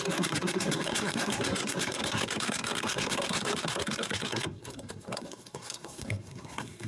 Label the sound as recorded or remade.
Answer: remade